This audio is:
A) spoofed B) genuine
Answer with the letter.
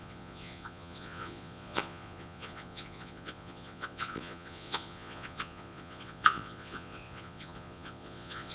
A